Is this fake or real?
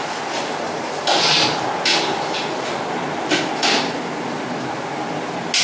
real